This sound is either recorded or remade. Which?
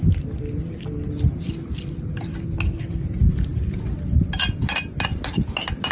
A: recorded